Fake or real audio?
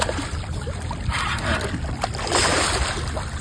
real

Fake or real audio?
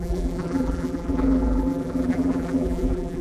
fake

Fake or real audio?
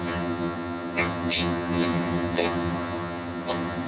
fake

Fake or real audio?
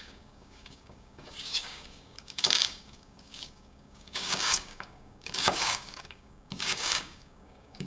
fake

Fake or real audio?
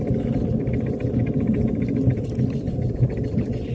real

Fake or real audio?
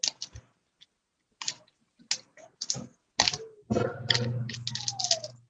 real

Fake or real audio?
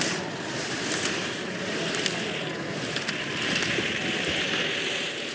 real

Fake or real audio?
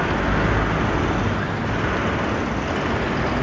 real